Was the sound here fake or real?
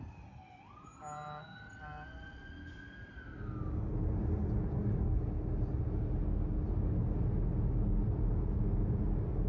real